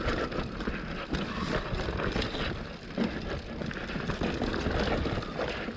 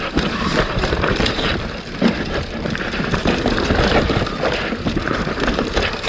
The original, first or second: first